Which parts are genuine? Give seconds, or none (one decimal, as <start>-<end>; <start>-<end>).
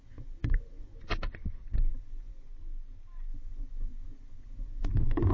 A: 0.9-1.9; 2.5-3.3